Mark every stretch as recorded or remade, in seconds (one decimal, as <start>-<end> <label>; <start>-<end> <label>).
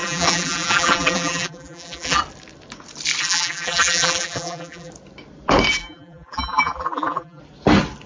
0.0-2.2 remade; 2.2-3.2 recorded; 3.2-4.9 remade; 4.9-5.8 recorded; 5.8-7.4 remade; 7.4-8.1 recorded